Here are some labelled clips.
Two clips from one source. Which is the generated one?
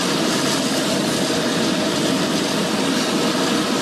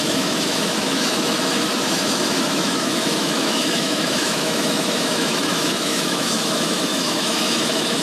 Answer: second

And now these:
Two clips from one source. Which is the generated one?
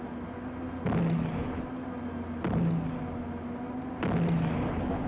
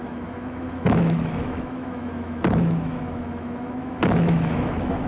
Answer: second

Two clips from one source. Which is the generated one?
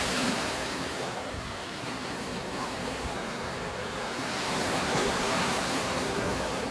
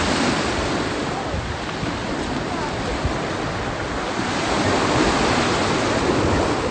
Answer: first